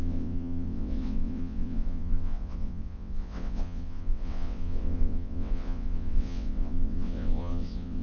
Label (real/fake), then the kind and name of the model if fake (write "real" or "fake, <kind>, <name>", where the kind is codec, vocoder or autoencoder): fake, vocoder, WaveNeXt